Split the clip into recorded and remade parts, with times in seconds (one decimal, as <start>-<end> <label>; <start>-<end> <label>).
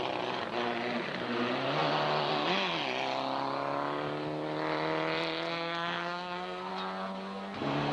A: 0.0-5.5 recorded; 5.5-6.7 remade; 6.7-7.9 recorded